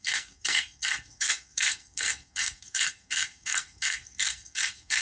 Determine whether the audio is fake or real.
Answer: fake